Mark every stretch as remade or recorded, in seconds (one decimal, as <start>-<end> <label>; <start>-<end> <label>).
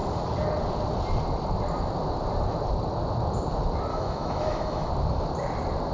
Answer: 0.0-3.9 recorded; 3.9-4.9 remade; 4.9-5.9 recorded